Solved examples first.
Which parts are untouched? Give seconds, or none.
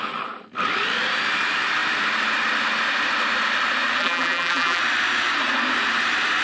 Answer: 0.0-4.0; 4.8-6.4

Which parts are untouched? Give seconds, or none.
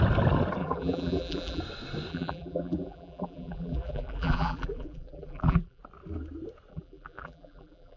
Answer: 0.0-0.6; 1.6-2.1; 5.8-6.7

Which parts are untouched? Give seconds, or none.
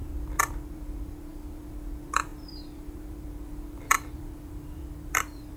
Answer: none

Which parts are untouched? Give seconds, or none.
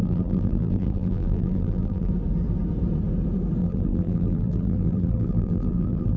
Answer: 2.1-3.6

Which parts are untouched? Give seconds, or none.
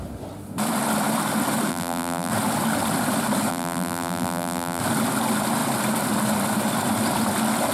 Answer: 0.0-1.7; 2.3-3.5; 4.8-7.7